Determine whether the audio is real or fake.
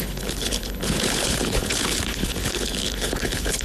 fake